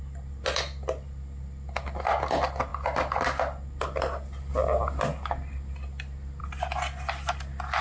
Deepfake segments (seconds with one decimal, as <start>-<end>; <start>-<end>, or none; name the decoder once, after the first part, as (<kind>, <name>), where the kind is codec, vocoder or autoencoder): none